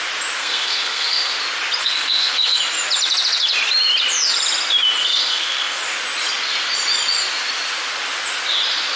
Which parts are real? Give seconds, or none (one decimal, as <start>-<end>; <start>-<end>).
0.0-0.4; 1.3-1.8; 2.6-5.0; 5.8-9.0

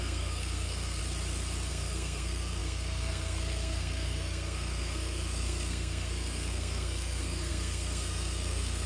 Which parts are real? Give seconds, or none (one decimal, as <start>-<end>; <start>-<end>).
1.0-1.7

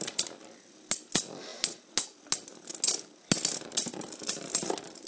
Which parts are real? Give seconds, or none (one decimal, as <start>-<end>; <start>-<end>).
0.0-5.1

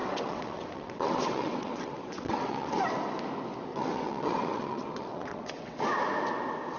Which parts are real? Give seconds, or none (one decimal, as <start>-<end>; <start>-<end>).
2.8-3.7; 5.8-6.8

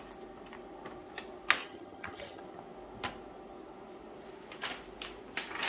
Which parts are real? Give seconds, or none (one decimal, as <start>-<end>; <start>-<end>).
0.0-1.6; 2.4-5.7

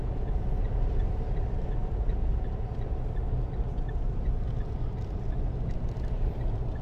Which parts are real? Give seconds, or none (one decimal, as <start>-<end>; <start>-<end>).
0.0-6.8

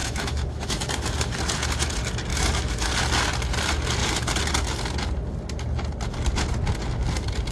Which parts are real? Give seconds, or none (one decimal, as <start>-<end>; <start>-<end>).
0.8-2.3; 2.9-7.5

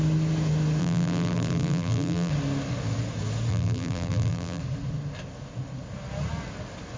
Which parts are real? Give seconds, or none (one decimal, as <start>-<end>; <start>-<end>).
0.0-0.8; 2.3-3.5; 4.6-7.0